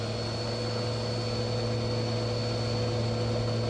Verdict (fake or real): real